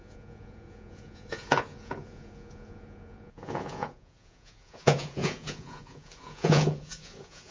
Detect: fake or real fake